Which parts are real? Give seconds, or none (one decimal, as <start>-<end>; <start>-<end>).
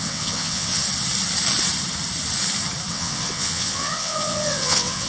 0.8-2.9